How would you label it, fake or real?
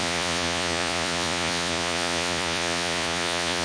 fake